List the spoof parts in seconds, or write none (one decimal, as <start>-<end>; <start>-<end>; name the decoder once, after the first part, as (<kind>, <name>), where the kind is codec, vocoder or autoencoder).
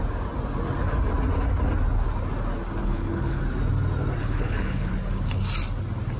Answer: 2.8-3.4 (codec, HILCodec); 4.2-4.9